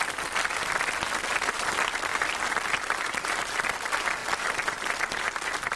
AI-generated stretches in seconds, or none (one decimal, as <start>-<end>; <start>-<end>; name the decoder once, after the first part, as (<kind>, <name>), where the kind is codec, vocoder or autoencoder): none